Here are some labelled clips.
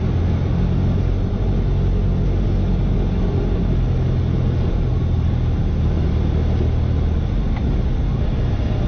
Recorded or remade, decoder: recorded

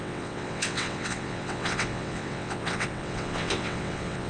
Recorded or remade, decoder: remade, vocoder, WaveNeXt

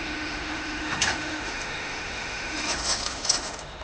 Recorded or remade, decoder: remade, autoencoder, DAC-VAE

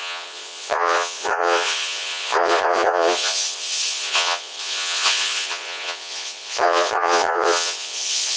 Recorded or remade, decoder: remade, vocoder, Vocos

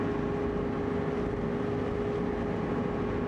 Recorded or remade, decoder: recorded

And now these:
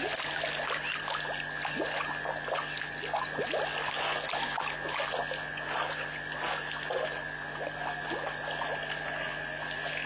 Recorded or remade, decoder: recorded